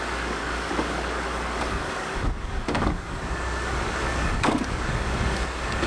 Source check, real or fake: fake